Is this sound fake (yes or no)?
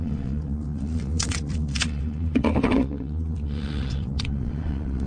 yes